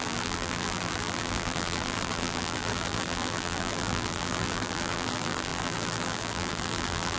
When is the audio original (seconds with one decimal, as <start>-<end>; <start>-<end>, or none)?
none